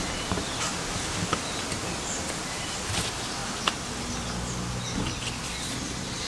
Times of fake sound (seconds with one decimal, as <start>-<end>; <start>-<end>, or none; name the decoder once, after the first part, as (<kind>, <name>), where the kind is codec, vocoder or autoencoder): none